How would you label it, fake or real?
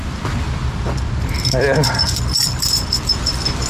fake